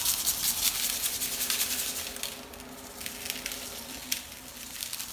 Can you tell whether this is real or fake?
real